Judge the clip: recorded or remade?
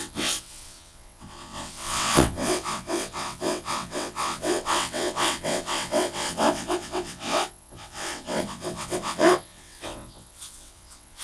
remade